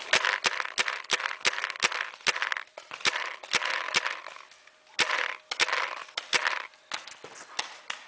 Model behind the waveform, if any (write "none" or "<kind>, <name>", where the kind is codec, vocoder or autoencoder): none